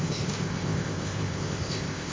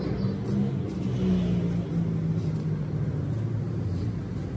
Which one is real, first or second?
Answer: second